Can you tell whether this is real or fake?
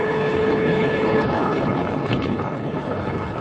fake